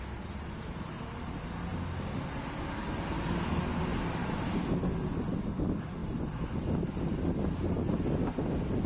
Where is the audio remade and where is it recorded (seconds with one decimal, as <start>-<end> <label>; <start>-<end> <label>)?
0.0-8.9 recorded